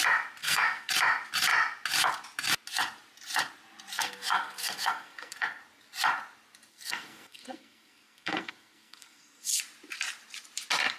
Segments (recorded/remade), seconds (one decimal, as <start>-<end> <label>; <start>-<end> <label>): 0.0-0.4 recorded; 0.4-0.9 remade; 0.9-3.9 recorded; 3.9-5.6 remade; 5.6-6.7 recorded; 6.7-9.6 remade; 9.6-11.0 recorded

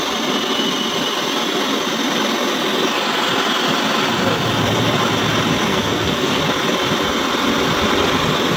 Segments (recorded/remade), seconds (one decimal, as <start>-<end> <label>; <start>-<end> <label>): 0.0-5.7 recorded; 5.7-6.4 remade; 6.4-8.6 recorded

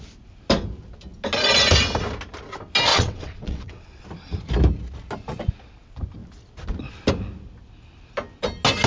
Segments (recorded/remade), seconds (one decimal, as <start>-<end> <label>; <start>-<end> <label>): 0.0-2.9 recorded; 2.9-4.0 remade; 4.0-8.9 recorded

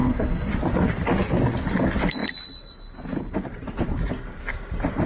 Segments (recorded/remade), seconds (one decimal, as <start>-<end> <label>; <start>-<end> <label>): 0.0-0.5 remade; 0.5-5.1 recorded